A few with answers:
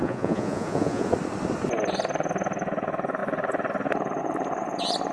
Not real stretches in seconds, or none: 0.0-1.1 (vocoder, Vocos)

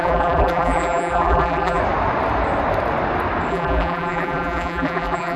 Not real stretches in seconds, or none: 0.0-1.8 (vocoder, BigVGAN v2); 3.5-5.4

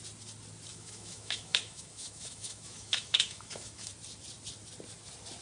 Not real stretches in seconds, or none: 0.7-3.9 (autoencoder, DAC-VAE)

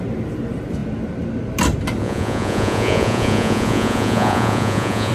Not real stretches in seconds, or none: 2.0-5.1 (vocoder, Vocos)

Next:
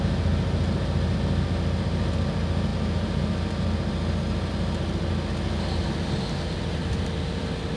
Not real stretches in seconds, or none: none

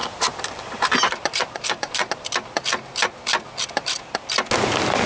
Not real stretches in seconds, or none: 0.0-2.1 (vocoder, BigVGAN v2)